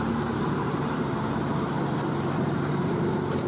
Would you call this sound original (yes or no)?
no